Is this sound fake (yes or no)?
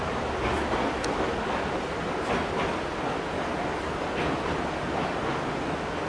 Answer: no